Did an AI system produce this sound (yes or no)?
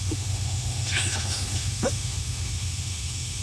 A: yes